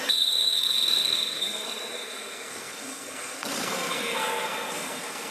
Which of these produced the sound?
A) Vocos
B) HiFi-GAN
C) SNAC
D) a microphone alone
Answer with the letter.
C